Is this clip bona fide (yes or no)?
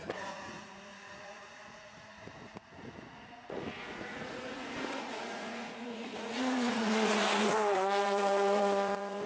no